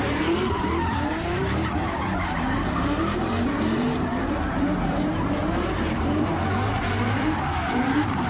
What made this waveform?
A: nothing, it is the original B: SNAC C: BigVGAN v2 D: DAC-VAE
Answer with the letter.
C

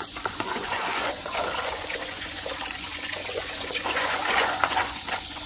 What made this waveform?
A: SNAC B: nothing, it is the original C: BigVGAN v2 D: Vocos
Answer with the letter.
D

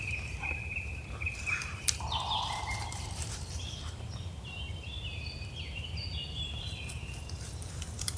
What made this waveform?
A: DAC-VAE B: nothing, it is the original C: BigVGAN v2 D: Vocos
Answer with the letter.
C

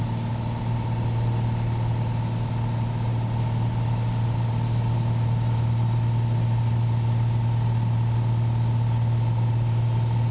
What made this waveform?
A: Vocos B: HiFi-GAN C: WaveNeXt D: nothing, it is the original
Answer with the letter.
D